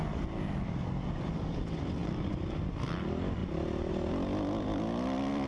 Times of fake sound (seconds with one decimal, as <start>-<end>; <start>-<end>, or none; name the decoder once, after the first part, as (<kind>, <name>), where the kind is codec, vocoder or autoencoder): none